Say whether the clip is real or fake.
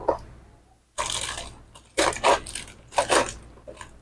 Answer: real